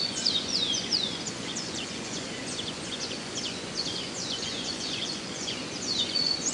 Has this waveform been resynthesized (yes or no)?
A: yes